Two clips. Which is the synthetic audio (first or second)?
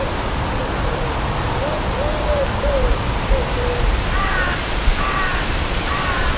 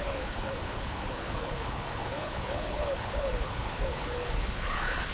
second